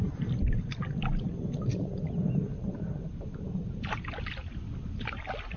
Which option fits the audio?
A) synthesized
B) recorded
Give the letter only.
B